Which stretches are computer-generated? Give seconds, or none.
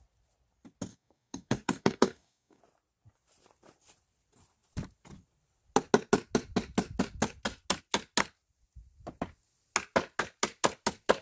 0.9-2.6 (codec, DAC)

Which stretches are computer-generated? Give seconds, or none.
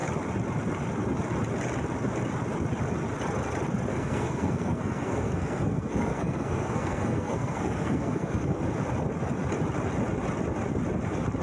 3.9-8.6 (codec, SNAC)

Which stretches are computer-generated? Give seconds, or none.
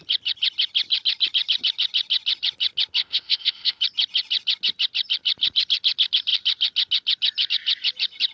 3.0-3.8 (codec, ZipCodec)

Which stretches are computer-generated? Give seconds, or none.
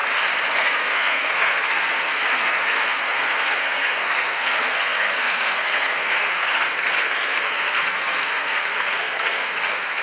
0.5-10.0 (codec, SNAC)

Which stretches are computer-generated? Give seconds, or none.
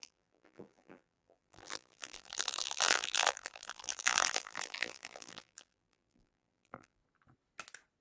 0.0-7.0 (vocoder, BigVGAN v2)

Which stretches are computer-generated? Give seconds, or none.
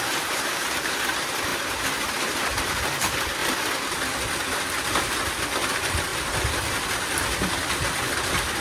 0.0-8.6 (vocoder, BigVGAN v2)